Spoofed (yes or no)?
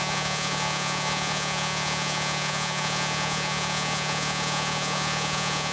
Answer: yes